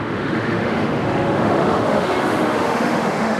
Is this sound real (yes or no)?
no